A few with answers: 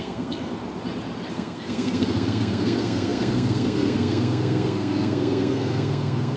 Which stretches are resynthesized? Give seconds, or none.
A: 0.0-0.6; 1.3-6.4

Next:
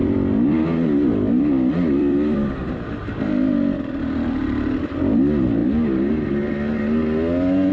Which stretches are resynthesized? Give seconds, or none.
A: 0.0-5.6

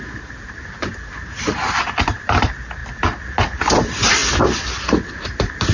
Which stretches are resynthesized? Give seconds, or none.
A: 0.0-2.8; 3.8-4.2; 5.1-5.7

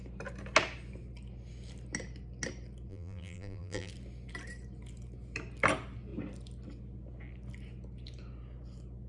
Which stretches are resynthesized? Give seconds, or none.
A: 2.9-3.9